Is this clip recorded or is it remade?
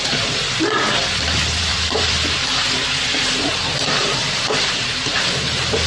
remade